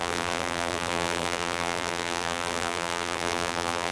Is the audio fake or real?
fake